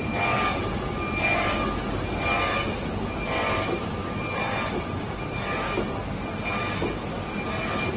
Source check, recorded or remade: recorded